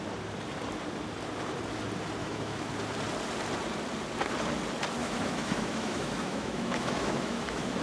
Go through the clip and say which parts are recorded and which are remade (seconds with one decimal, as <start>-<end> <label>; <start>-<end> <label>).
0.0-2.2 recorded; 2.2-2.7 remade; 2.7-5.0 recorded; 5.0-7.8 remade